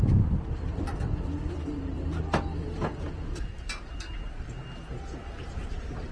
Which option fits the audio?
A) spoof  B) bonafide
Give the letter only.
B